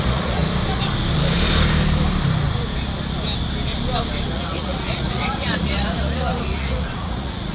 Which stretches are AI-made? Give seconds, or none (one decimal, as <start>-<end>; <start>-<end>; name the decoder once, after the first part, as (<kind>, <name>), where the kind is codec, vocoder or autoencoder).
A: 0.0-0.4 (vocoder, Vocos); 4.3-7.5